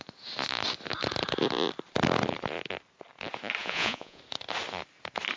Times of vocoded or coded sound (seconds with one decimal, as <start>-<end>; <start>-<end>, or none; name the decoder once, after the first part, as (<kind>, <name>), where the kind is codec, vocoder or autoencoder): 3.6-4.2 (vocoder, Vocos)